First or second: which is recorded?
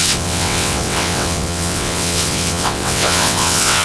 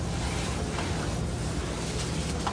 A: second